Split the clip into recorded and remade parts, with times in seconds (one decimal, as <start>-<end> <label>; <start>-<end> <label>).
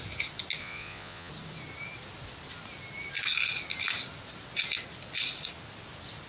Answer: 0.0-0.6 recorded; 0.6-1.3 remade; 1.3-6.3 recorded